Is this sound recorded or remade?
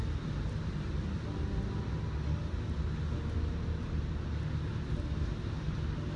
recorded